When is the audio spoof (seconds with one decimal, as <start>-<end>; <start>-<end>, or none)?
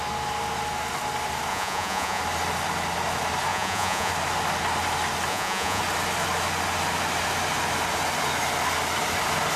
1.5-2.2; 3.5-4.1; 5.3-5.8